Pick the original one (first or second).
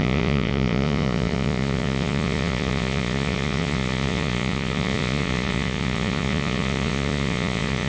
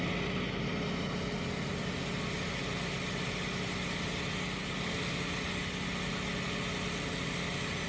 second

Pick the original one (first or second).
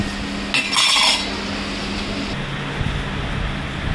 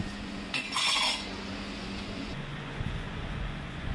first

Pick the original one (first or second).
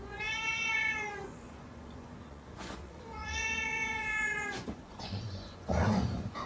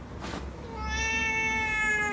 second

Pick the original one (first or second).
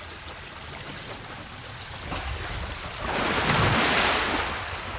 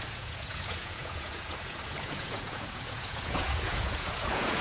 first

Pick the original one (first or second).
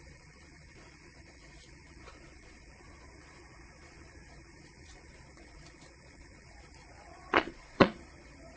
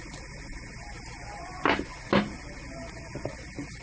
second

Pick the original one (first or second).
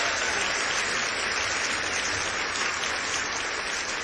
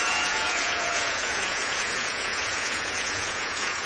first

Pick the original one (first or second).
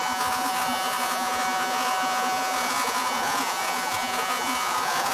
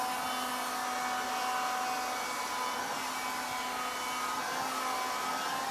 second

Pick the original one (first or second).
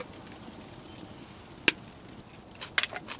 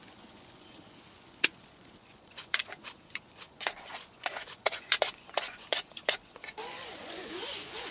first